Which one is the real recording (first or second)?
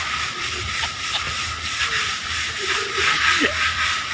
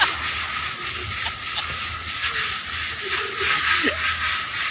second